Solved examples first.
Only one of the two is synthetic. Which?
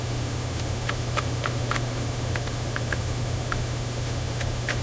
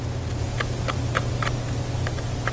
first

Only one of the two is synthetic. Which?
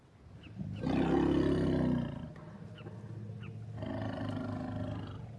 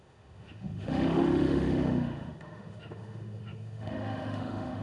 second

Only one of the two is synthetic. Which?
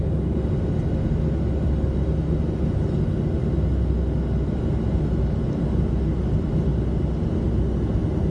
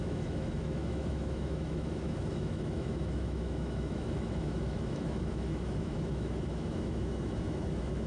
second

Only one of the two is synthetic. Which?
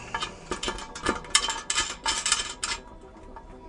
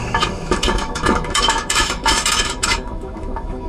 second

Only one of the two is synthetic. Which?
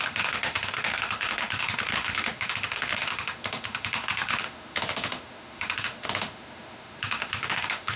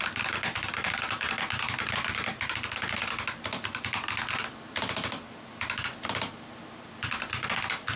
first